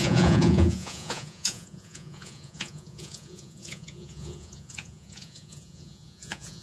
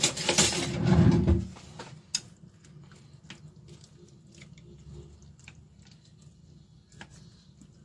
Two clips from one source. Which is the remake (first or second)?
first